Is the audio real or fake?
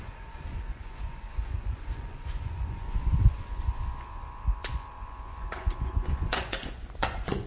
fake